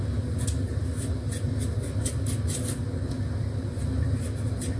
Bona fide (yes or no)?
yes